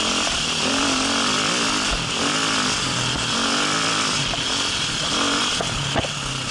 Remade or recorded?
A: recorded